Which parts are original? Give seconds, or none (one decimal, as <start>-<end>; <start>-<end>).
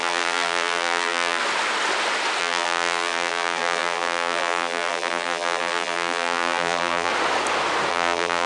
1.4-2.4; 7.1-7.9